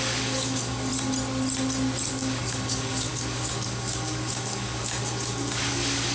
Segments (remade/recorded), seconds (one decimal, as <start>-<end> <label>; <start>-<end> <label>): 0.0-0.9 remade; 0.9-2.1 recorded; 2.1-6.1 remade